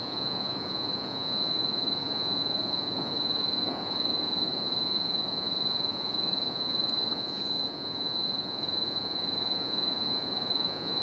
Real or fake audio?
fake